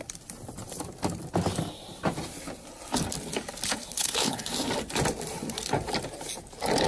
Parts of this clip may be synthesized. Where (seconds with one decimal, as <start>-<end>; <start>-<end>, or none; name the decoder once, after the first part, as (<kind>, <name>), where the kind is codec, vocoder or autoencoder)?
3.7-4.4 (codec, HILCodec)